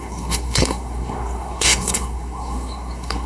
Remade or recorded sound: remade